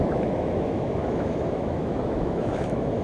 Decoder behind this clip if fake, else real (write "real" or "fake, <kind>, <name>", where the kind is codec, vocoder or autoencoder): fake, autoencoder, DAC-VAE